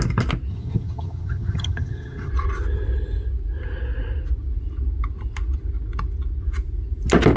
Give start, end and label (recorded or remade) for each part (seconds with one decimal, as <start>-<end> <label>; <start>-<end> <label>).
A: 0.0-0.5 recorded; 0.5-2.3 remade; 2.3-7.4 recorded